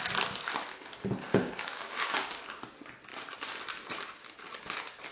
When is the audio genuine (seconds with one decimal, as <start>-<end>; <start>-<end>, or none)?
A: 0.0-1.3; 2.4-5.1